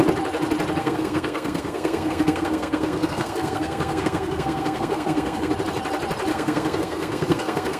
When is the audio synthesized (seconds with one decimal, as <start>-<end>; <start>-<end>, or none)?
0.8-5.5; 6.3-7.8